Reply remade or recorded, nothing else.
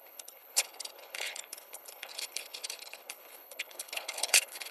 remade